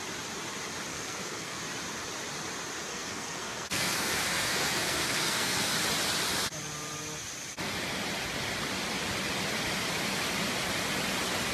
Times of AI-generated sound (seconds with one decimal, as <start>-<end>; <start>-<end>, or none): 0.9-1.6; 2.9-5.7

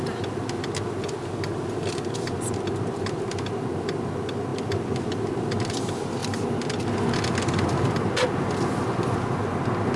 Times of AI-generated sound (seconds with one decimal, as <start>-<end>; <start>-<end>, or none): none

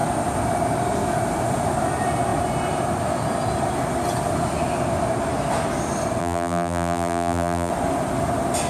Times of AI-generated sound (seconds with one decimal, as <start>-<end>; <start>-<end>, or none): 6.2-7.7

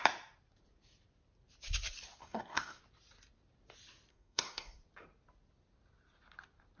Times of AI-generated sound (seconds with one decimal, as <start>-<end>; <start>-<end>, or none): 2.2-2.8; 4.1-4.8

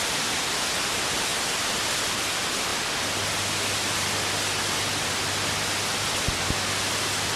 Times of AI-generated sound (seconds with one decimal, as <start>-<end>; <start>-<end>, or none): none

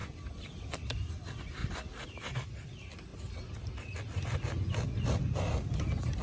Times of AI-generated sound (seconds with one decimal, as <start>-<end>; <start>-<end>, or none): none

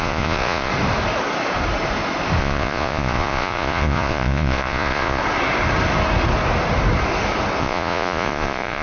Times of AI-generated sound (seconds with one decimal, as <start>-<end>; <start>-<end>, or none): 0.0-0.7; 2.4-5.2; 7.6-8.8

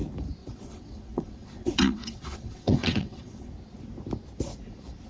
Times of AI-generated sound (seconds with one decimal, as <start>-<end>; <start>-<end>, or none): 0.4-3.5